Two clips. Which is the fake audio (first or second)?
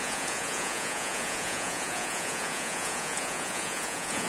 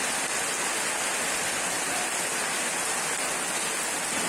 first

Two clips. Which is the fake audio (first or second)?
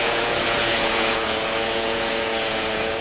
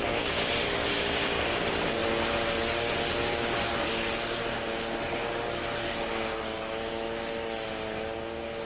first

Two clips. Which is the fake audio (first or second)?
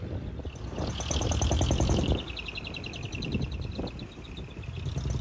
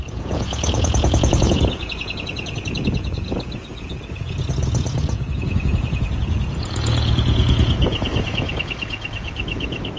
second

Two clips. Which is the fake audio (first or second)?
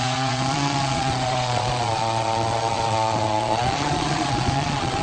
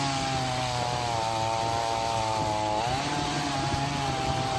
first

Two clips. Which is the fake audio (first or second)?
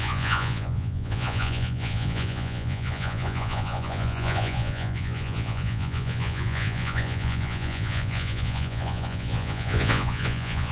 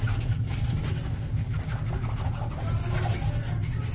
first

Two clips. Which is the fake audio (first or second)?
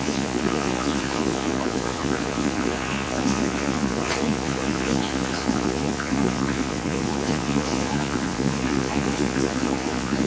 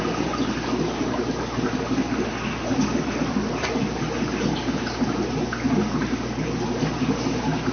first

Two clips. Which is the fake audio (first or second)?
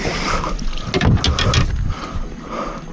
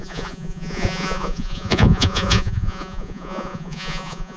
second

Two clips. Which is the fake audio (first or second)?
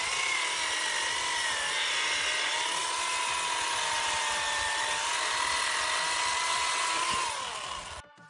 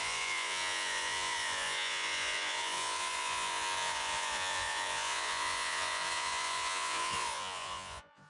second